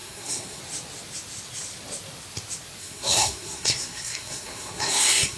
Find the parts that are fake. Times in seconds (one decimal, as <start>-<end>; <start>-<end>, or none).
0.0-0.6; 2.8-5.4